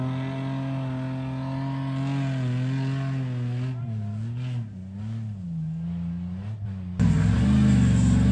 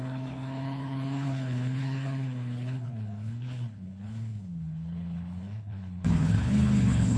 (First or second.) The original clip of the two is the first